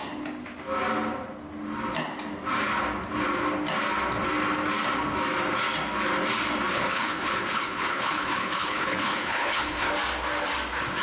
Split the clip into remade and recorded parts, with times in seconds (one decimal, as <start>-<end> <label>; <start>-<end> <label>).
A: 0.0-6.7 recorded; 6.7-9.9 remade; 9.9-11.0 recorded